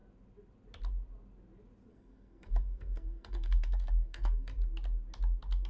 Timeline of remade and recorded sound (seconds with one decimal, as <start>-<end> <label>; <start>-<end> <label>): 0.0-1.9 recorded; 1.9-4.5 remade; 4.5-5.7 recorded